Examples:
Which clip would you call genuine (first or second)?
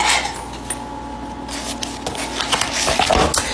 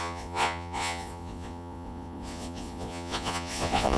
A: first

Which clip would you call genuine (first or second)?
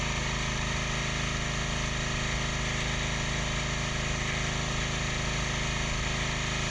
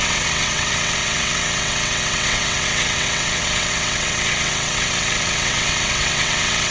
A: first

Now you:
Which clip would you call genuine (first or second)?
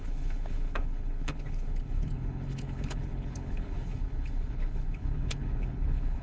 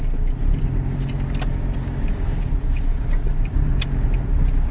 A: second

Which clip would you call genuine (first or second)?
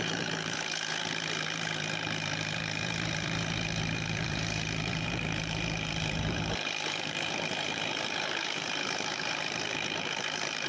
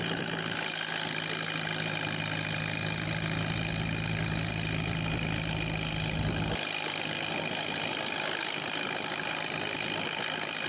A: second